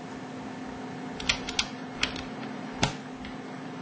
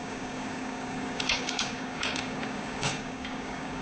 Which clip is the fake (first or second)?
second